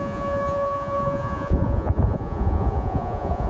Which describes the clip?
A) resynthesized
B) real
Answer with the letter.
A